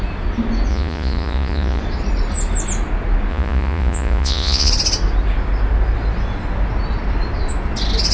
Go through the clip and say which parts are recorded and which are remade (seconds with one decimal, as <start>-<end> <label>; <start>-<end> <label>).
0.0-0.7 recorded; 0.7-1.8 remade; 1.8-3.3 recorded; 3.3-4.7 remade; 4.7-8.1 recorded